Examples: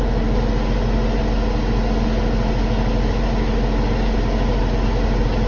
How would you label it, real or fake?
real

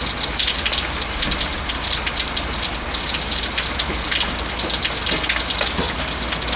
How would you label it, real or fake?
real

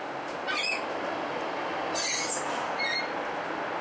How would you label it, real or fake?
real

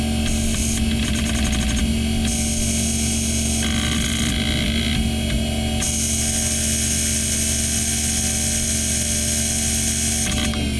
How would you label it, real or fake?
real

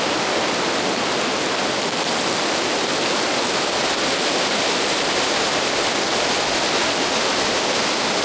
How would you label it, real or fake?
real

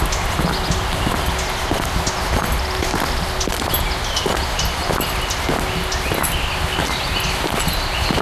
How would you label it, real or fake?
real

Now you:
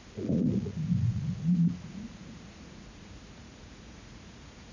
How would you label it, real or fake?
fake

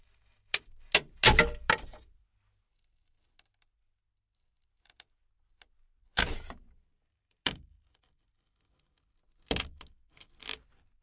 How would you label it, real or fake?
real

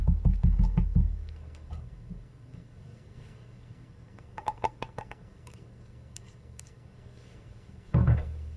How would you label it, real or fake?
fake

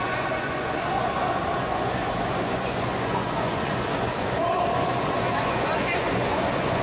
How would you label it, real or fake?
fake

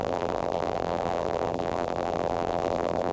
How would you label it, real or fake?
fake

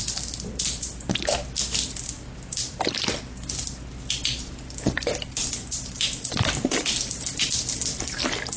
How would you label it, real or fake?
real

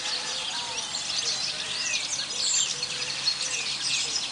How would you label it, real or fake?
real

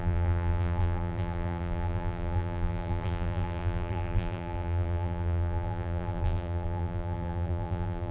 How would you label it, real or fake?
fake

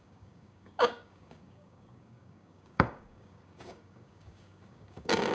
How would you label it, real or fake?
fake